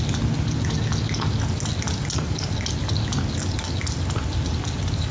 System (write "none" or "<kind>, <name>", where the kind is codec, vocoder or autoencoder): none